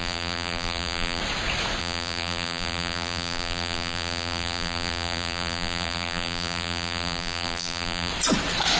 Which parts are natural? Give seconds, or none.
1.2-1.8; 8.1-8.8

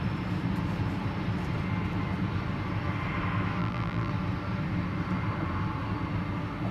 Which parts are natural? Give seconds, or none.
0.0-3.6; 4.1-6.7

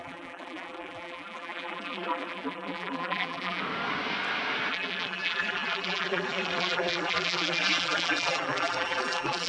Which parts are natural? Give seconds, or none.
3.6-4.7

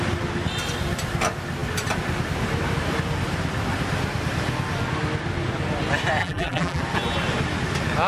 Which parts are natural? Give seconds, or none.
0.0-6.2; 6.8-8.1